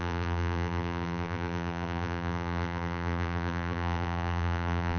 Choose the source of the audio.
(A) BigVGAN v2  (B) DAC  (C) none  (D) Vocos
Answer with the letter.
A